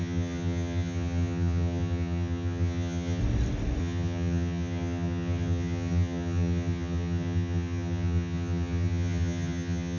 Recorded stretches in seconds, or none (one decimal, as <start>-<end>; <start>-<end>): 3.2-3.8